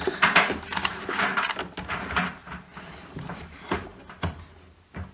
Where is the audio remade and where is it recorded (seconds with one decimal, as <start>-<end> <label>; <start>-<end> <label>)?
0.0-1.3 remade; 1.3-2.1 recorded; 2.1-3.9 remade; 3.9-5.1 recorded